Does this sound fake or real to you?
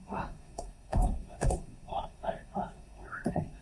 fake